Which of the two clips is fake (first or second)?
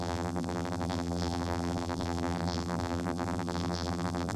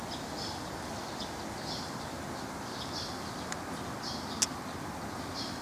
first